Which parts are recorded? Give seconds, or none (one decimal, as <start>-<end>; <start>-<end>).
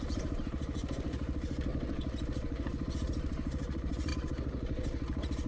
1.7-2.6; 4.1-5.5